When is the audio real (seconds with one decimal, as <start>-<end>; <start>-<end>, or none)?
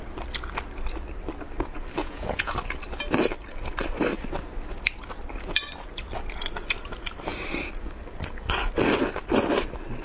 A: 0.0-2.0; 2.5-10.0